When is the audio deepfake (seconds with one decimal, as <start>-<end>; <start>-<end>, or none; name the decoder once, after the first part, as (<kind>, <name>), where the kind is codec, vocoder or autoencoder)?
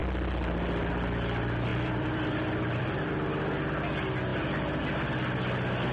1.7-3.1 (vocoder, BigVGAN v2)